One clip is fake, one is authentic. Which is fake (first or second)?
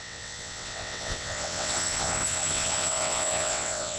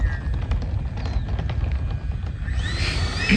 first